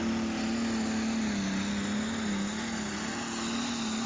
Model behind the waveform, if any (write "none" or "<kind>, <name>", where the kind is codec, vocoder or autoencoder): none